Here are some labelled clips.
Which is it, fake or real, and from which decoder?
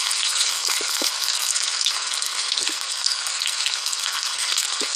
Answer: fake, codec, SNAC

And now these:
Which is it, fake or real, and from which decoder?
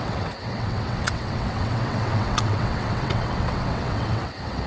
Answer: fake, vocoder, WaveNeXt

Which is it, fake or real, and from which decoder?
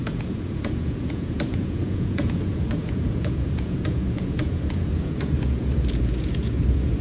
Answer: fake, vocoder, Vocos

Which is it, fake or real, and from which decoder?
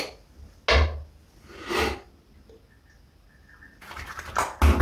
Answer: real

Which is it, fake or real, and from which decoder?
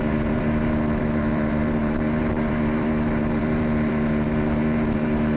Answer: fake, vocoder, BigVGAN v2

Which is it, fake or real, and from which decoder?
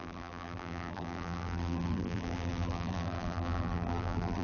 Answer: fake, vocoder, BigVGAN v2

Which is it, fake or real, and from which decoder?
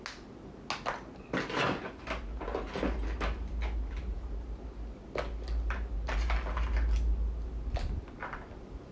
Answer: real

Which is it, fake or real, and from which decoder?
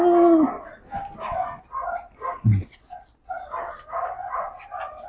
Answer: real